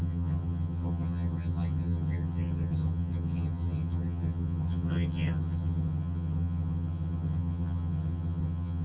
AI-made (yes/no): yes